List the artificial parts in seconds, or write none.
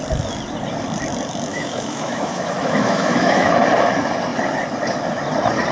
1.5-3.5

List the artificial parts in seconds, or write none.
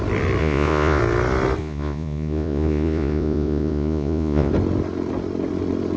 0.4-1.0; 1.6-4.5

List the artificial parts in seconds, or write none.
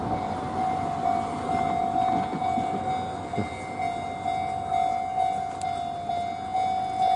none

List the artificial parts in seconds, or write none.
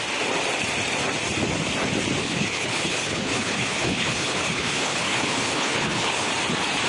2.2-6.3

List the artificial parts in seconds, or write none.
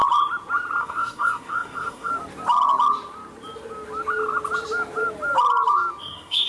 0.8-2.1; 6.0-6.5